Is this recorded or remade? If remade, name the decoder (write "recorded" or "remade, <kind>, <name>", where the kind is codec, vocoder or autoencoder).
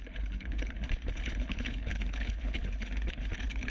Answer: remade, codec, HILCodec